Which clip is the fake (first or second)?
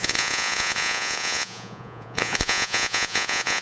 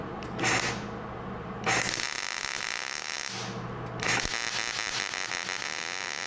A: first